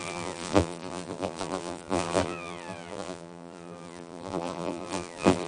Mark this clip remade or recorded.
remade